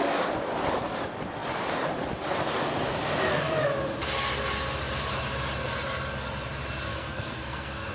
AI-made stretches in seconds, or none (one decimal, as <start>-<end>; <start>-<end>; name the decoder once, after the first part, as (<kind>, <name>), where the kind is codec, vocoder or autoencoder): 6.9-7.9 (codec, SNAC)